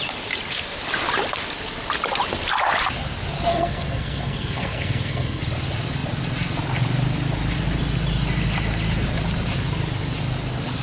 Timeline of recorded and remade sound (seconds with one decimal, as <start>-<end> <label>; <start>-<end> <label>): 0.0-3.5 recorded; 3.5-5.4 remade; 5.4-10.8 recorded